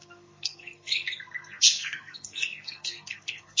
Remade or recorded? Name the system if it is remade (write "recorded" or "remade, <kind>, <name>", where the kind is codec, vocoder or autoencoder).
remade, codec, SNAC